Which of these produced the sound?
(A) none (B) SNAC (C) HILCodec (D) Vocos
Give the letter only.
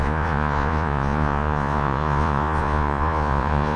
D